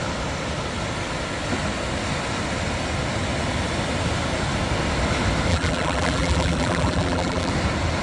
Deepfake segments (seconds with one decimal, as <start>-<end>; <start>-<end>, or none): 5.5-7.5